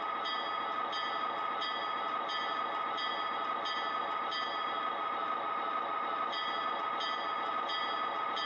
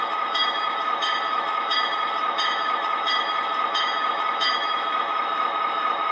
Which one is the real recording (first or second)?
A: first